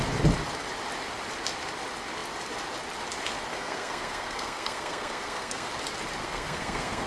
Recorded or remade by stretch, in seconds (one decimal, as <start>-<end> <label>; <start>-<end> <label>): 0.0-3.5 recorded; 3.5-5.7 remade; 5.7-6.2 recorded; 6.2-7.1 remade